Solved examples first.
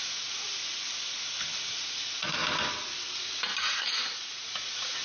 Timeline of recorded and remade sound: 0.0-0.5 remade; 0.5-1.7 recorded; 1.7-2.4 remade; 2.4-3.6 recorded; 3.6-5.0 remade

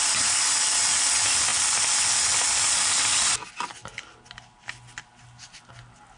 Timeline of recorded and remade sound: 0.0-6.2 recorded